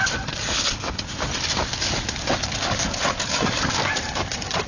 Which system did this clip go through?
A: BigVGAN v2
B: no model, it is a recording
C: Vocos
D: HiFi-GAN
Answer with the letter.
A